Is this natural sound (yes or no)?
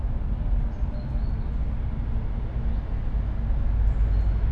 yes